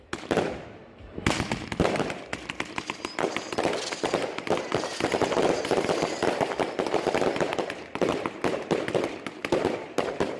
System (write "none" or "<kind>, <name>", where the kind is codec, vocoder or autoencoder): none